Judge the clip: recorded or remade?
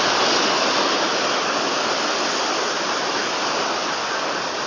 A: recorded